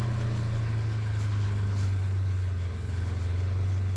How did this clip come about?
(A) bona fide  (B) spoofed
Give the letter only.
B